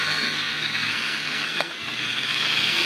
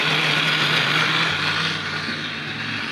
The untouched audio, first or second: second